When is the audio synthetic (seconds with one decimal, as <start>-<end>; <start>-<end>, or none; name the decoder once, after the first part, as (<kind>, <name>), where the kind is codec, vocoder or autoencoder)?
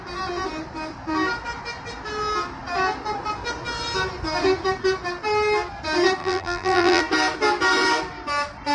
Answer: 6.2-7.0 (vocoder, BigVGAN v2)